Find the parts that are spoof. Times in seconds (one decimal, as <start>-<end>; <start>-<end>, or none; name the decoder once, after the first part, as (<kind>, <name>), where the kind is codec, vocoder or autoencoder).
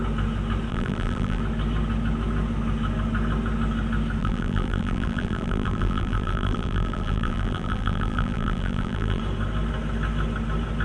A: 0.7-1.4 (vocoder, BigVGAN v2); 4.2-9.2